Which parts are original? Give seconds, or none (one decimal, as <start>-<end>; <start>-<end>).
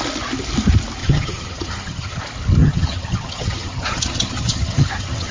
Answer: 0.0-1.0; 2.2-2.6